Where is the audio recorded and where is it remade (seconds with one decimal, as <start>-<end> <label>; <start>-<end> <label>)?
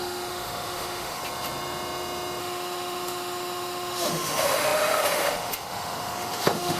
0.0-1.2 remade; 1.2-2.4 recorded; 2.4-6.8 remade